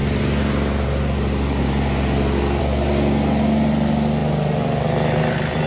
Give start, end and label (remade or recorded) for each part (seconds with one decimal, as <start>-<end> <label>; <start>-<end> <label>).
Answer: 0.0-5.7 recorded